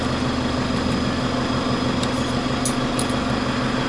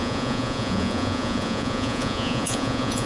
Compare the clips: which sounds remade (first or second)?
second